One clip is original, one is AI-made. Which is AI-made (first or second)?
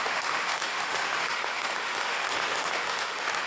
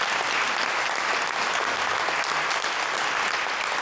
first